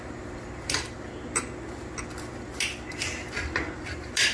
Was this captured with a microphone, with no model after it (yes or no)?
yes